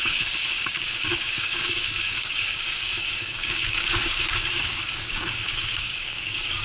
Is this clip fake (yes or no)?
yes